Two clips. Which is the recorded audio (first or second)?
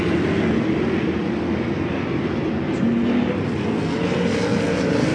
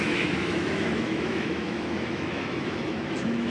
first